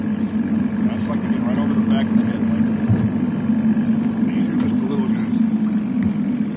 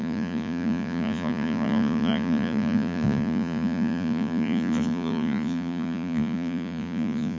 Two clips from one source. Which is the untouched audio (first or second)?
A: first